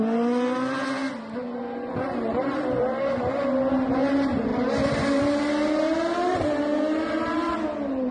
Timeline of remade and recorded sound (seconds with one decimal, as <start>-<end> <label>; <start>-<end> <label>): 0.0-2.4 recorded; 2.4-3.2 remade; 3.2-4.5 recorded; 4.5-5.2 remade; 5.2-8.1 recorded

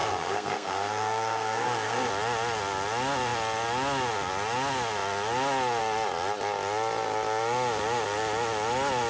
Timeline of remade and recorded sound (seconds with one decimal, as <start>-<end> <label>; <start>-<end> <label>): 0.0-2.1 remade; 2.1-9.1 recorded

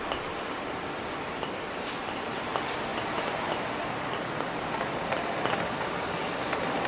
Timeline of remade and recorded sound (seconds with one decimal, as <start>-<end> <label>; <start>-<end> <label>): 0.0-6.9 recorded

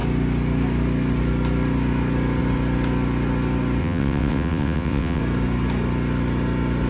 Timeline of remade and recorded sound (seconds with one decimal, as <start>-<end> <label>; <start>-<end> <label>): 0.0-3.8 recorded; 3.8-5.2 remade; 5.2-6.9 recorded

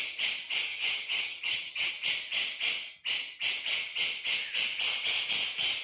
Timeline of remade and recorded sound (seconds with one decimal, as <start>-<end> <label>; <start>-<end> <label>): 0.0-0.7 recorded; 0.7-1.9 remade; 1.9-5.8 recorded

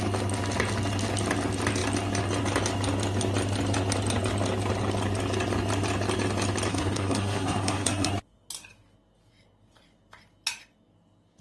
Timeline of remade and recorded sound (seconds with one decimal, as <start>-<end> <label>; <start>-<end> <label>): 0.0-6.7 recorded; 6.7-8.1 remade; 8.1-11.4 recorded

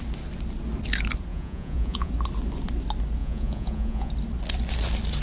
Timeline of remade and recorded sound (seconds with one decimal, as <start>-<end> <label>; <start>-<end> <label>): 0.0-1.3 recorded; 1.3-2.1 remade; 2.1-3.2 recorded; 3.2-4.1 remade; 4.1-5.2 recorded